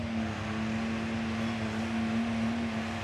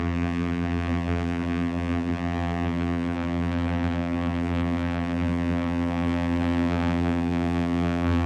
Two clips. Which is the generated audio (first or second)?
second